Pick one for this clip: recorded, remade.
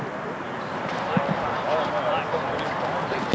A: recorded